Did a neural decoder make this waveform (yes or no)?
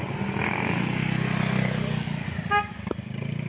no